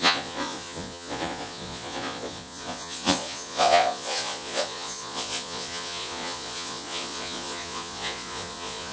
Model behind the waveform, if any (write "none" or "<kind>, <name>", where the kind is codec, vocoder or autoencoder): vocoder, Vocos